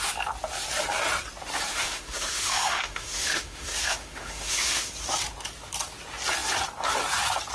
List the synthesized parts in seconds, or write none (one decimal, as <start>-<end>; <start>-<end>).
1.7-4.9